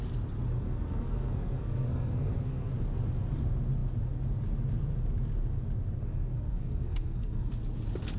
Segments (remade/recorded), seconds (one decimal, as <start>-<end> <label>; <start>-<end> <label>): 0.0-0.5 recorded; 0.5-2.7 remade; 2.7-6.0 recorded; 6.0-7.6 remade; 7.6-8.2 recorded